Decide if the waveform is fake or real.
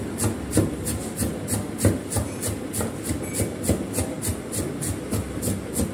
real